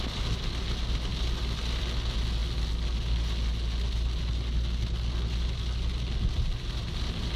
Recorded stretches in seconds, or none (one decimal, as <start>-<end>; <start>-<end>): 0.0-7.4